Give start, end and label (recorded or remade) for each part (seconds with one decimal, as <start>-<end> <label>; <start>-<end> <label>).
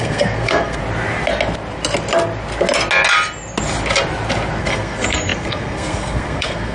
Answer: 0.0-0.8 remade; 0.8-4.6 recorded; 4.6-6.7 remade